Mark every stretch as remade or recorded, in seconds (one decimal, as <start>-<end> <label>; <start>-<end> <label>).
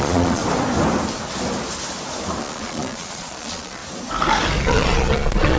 0.0-0.4 remade; 0.4-2.4 recorded; 2.4-3.8 remade; 3.8-4.6 recorded; 4.6-5.6 remade